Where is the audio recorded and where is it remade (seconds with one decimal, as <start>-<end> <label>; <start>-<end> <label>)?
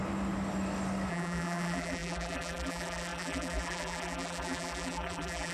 0.0-1.1 recorded; 1.1-5.5 remade